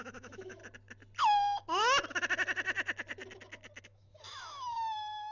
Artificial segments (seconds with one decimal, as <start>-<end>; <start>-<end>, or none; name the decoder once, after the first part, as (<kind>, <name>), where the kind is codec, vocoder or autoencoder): 0.0-0.6 (autoencoder, DAC-VAE); 3.8-5.3